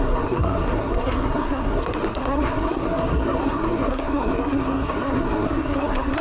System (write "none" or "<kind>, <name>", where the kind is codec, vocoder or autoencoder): codec, SNAC